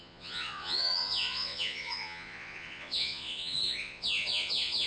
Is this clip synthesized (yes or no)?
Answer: yes